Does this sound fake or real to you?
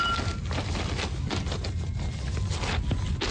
real